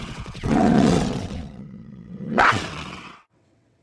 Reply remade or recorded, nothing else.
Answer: remade